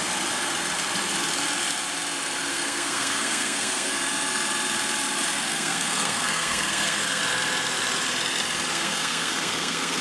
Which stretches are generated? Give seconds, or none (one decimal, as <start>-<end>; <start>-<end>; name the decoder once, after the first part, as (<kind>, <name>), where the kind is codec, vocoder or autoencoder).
2.5-3.9 (codec, SNAC); 5.5-7.2; 8.7-10.0